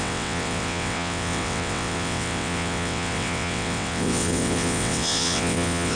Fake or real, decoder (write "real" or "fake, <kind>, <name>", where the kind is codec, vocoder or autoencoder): fake, vocoder, WaveNeXt